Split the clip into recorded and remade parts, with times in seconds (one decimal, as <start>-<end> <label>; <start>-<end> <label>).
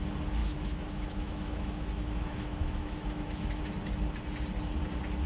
0.0-0.4 recorded; 0.4-3.6 remade; 3.6-5.3 recorded